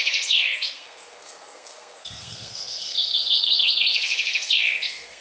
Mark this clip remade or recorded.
remade